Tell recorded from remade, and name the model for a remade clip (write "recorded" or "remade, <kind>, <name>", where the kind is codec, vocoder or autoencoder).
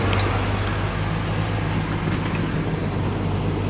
recorded